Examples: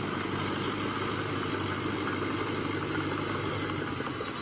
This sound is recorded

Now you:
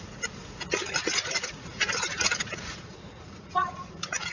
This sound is remade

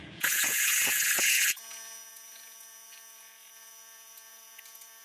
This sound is remade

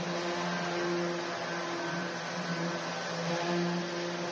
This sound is recorded